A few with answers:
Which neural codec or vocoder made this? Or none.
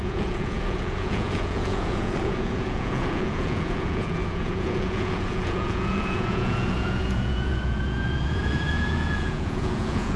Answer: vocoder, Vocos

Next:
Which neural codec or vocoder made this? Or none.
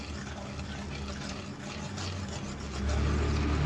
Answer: none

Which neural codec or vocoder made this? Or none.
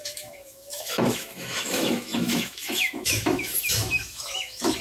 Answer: autoencoder, DAC-VAE